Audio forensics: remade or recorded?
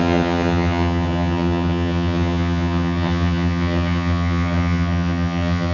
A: remade